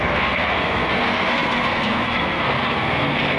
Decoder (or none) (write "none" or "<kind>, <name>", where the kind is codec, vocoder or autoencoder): codec, SNAC